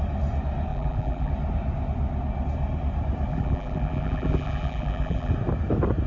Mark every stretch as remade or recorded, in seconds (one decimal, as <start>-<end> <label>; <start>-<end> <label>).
0.0-0.7 recorded; 0.7-1.3 remade; 1.3-3.3 recorded; 3.3-5.3 remade; 5.3-6.1 recorded